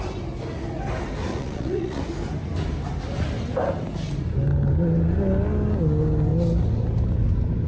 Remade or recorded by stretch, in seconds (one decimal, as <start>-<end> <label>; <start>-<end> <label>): 0.0-1.3 recorded; 1.3-2.0 remade; 2.0-7.7 recorded